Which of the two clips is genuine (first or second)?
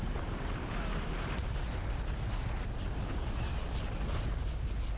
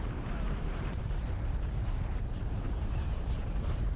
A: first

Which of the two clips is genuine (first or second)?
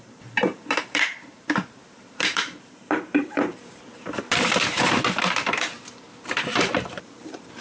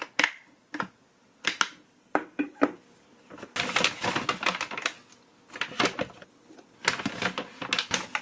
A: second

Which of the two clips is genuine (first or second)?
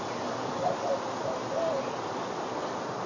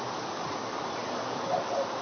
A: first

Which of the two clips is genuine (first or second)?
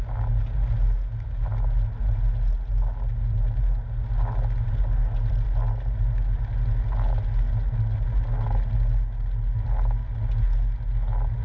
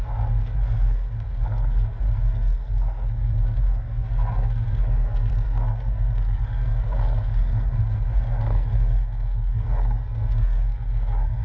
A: first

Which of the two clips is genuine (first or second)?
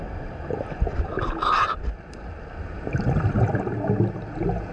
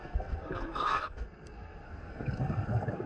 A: first